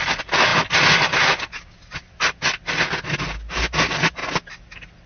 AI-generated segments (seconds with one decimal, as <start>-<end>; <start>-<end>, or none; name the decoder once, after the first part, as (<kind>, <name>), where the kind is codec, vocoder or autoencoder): none

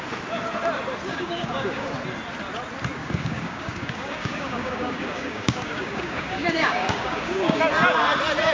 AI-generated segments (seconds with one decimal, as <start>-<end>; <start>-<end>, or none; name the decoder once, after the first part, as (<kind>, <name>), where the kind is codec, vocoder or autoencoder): 1.1-1.9 (codec, DAC); 3.0-7.6

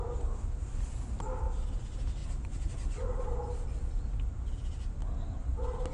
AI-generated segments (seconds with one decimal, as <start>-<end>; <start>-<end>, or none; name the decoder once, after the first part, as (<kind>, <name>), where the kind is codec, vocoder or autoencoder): none

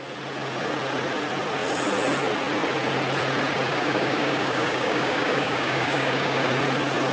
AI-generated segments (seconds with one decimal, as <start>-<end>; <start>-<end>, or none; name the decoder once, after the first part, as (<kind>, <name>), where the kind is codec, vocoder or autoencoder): 3.7-6.5 (codec, DAC)